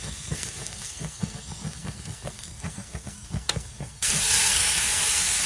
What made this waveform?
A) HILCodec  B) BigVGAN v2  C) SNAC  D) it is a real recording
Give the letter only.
C